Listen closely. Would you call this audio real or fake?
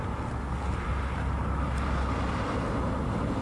real